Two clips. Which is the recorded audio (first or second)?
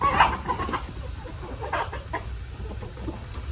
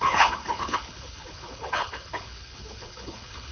first